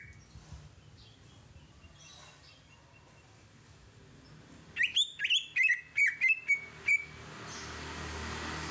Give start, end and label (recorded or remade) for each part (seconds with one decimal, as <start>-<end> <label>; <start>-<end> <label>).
0.0-8.7 recorded